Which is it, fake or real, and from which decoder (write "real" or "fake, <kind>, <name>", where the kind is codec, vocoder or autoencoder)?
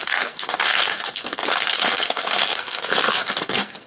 fake, codec, SNAC